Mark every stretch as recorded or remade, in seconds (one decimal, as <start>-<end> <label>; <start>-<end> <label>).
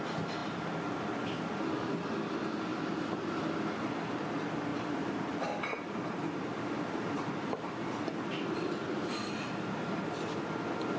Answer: 0.0-2.7 recorded; 2.7-3.2 remade; 3.2-4.7 recorded; 4.7-7.8 remade; 7.8-11.0 recorded